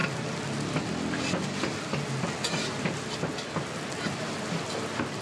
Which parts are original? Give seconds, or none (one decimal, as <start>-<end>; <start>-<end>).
0.0-5.2

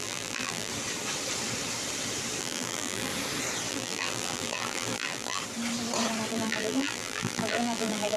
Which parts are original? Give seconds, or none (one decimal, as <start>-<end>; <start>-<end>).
0.7-2.4; 3.1-3.7; 5.4-6.3

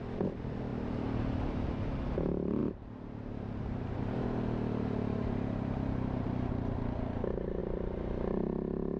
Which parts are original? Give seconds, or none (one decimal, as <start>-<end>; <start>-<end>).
0.0-2.6; 6.5-9.0

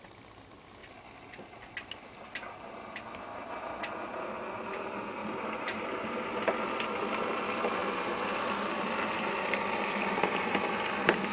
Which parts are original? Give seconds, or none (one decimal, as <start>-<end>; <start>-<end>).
0.0-5.2; 5.9-11.3

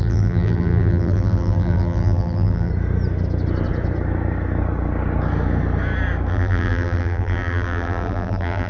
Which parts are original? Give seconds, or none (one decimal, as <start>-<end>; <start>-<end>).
2.7-6.3

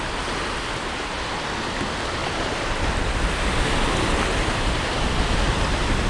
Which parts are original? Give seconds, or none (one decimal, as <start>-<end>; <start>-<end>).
0.0-2.2

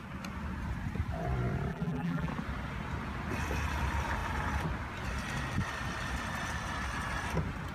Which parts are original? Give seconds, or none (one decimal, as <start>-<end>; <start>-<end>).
0.0-1.7; 2.3-7.7